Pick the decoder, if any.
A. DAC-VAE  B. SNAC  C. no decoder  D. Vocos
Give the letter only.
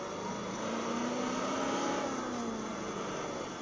C